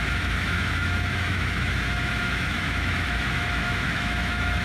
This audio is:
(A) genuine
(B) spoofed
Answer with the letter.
B